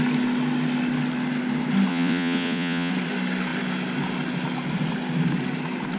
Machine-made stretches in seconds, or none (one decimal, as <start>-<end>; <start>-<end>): 1.9-2.9